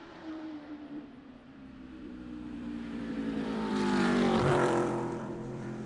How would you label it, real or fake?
fake